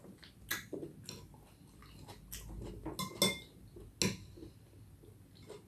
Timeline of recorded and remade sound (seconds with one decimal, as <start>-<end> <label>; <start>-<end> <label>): 0.0-5.7 recorded